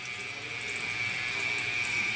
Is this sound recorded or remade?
recorded